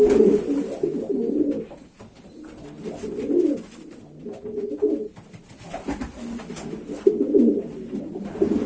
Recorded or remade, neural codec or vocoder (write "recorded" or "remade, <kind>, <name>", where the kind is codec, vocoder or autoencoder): recorded